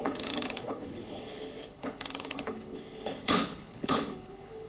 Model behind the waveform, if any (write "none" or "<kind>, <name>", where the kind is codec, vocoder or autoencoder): codec, HILCodec